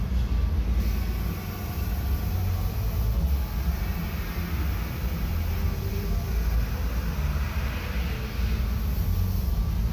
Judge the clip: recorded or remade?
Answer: recorded